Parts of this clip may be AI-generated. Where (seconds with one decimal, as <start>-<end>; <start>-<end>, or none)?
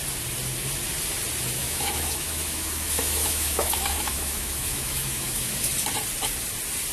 1.6-5.7